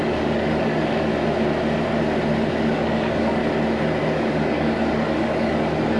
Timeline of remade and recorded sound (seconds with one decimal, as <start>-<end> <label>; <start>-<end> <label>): 0.0-1.1 remade; 1.1-2.5 recorded; 2.5-3.4 remade; 3.4-4.0 recorded; 4.0-6.0 remade